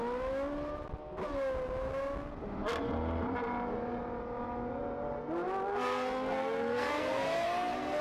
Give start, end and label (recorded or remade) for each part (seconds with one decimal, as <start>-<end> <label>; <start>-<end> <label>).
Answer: 0.0-5.7 recorded; 5.7-8.0 remade